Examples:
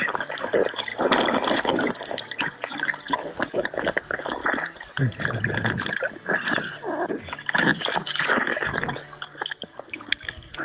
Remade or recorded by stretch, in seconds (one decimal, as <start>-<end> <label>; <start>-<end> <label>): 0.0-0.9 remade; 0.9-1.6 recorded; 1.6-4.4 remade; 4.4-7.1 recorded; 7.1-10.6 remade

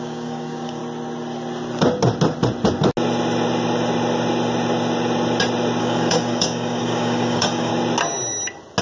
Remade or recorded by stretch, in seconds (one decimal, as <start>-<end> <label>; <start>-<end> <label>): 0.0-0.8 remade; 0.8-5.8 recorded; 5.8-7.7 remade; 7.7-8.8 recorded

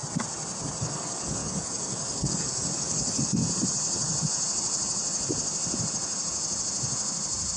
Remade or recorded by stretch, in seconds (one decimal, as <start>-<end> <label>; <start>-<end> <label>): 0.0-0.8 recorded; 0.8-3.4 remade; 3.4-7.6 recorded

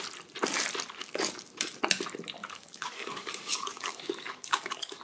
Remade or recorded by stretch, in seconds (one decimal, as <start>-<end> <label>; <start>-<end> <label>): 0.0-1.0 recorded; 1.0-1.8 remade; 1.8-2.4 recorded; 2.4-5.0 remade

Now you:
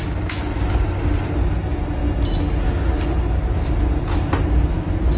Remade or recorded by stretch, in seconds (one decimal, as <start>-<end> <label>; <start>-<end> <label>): 0.0-5.2 recorded

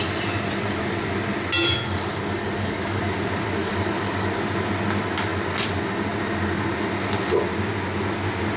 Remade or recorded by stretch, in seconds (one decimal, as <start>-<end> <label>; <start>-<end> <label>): 0.0-2.4 recorded; 2.4-3.0 remade; 3.0-3.6 recorded; 3.6-4.3 remade; 4.3-8.6 recorded

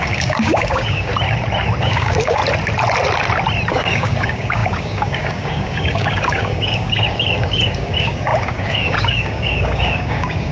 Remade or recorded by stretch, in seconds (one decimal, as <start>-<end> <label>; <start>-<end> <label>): 0.0-1.1 remade; 1.1-1.8 recorded; 1.8-2.4 remade; 2.4-3.7 recorded; 3.7-10.5 remade

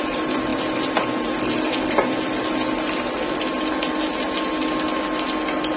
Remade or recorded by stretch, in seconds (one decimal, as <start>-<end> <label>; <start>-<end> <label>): 0.0-5.8 recorded